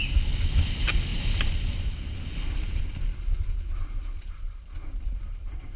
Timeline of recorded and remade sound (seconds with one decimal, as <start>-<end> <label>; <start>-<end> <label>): 0.0-5.8 recorded